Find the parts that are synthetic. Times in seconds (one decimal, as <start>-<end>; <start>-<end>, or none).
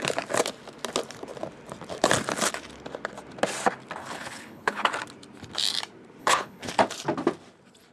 4.0-4.9; 6.2-6.7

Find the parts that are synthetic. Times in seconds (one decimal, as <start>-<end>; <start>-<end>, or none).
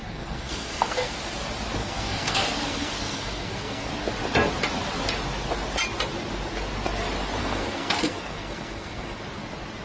0.0-1.2; 1.8-3.9; 7.4-9.2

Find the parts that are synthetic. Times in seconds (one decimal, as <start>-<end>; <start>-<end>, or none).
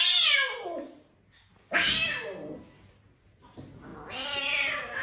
none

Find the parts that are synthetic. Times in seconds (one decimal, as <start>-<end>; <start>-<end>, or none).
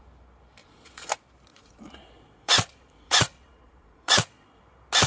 0.6-1.1; 1.5-4.6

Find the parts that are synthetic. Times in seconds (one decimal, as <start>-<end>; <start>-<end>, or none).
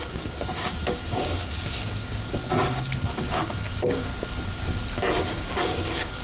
0.0-2.4; 3.0-4.1; 5.3-6.2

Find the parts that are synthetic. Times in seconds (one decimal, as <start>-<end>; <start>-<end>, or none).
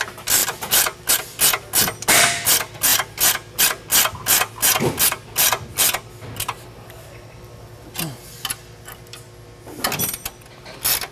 none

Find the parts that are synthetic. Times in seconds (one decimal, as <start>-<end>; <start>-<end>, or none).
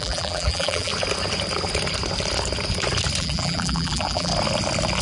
0.0-0.9; 3.2-4.3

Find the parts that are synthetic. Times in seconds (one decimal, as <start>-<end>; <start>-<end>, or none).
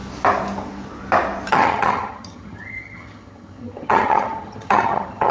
1.5-5.3